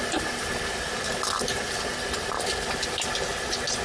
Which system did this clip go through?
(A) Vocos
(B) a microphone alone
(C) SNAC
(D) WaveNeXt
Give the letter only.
B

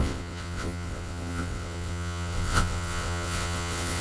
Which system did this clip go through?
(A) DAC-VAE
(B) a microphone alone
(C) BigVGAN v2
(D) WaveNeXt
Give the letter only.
D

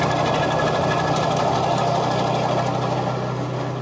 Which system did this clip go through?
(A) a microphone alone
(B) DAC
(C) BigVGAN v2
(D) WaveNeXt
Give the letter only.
A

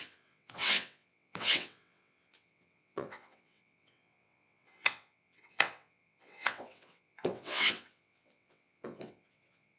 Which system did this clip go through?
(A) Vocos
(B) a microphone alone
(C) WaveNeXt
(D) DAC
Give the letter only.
C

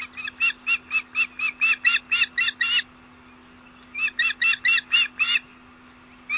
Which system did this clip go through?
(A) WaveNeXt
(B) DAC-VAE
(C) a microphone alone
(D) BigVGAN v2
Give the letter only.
C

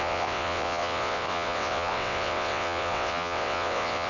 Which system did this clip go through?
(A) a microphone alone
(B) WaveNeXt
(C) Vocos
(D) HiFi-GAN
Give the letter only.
B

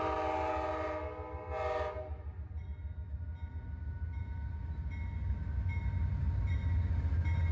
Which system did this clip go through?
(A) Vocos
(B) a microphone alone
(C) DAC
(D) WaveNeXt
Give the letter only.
B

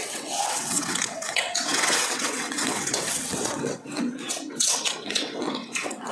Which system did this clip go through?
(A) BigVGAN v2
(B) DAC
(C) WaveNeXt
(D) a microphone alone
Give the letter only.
C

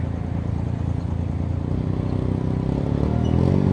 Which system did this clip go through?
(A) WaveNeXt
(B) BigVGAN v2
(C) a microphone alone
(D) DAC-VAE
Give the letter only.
C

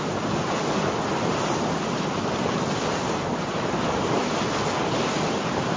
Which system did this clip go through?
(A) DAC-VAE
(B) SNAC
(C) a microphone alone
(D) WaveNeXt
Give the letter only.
C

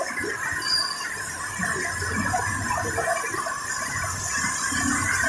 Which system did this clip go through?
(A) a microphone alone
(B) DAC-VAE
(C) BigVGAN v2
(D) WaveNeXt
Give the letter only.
A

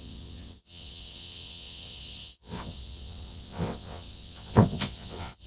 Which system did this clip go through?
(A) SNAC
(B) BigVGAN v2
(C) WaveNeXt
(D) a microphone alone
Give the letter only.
C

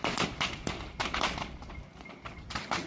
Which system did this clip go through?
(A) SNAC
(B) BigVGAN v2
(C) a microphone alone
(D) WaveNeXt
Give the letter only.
C